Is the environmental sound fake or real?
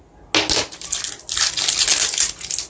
real